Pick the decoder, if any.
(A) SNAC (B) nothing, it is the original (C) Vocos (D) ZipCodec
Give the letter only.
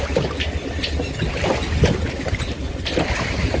B